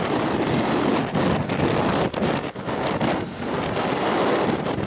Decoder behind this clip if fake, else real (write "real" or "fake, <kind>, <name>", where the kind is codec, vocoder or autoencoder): real